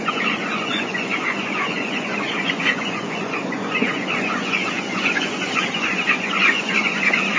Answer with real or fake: fake